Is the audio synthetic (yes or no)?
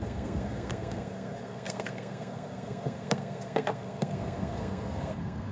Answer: yes